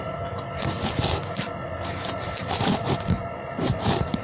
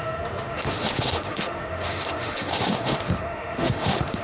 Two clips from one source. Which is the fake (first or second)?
second